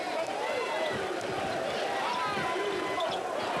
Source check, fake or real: real